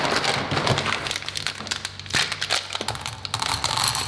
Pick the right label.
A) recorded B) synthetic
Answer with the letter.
A